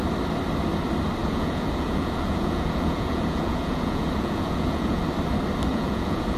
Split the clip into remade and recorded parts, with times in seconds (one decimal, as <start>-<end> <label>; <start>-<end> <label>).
0.0-1.2 recorded; 1.2-5.0 remade; 5.0-5.7 recorded; 5.7-6.4 remade